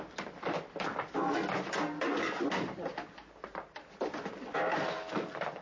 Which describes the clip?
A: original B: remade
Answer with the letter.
A